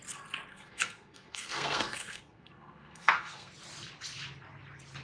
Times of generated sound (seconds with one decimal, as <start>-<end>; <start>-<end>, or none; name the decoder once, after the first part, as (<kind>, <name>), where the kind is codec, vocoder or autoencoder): 0.5-3.5 (codec, SNAC)